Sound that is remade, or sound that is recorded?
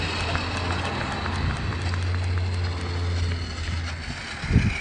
recorded